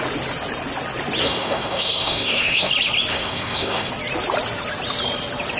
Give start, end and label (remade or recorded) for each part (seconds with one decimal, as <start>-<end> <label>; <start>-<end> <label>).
0.0-1.2 recorded; 1.2-2.7 remade; 2.7-3.1 recorded; 3.1-3.9 remade; 3.9-5.6 recorded